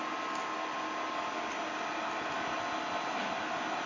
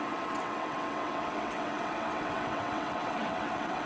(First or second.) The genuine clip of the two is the first